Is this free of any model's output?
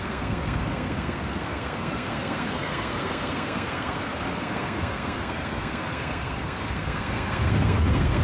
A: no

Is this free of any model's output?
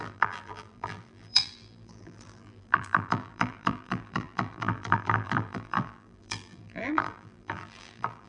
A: no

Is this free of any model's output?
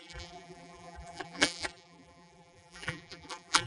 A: no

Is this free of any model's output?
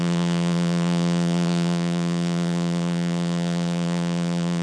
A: no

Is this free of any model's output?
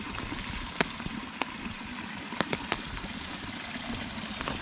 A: yes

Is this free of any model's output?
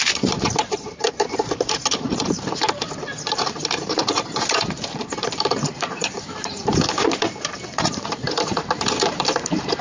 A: no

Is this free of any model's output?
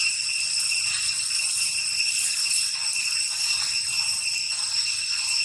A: yes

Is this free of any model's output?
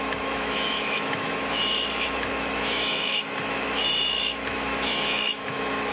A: no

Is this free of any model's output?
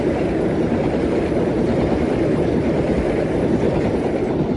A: no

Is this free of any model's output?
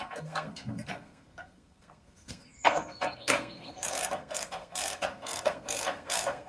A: no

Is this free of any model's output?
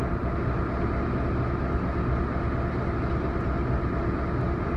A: yes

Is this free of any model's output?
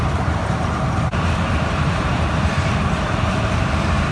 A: no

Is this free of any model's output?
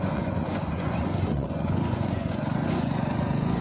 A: no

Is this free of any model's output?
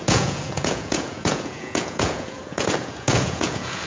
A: no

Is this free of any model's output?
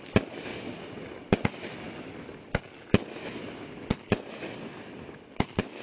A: yes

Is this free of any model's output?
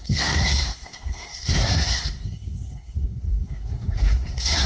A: no